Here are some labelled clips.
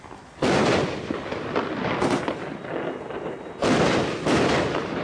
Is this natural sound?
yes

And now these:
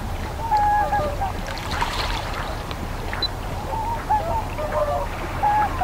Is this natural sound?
no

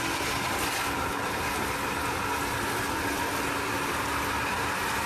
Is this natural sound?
yes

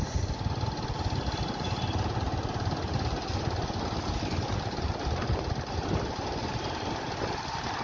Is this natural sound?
yes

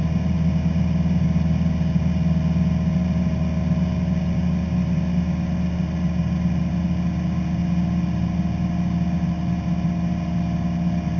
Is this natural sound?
yes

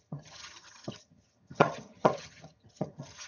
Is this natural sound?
no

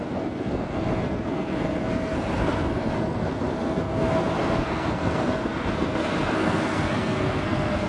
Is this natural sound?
no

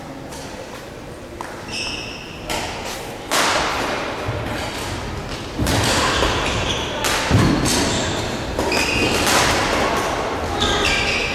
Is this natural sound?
yes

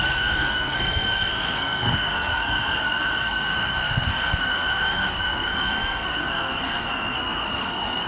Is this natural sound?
no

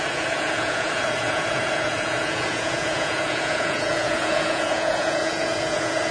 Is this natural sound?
no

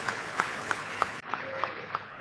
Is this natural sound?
no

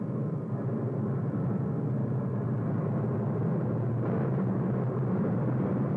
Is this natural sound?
yes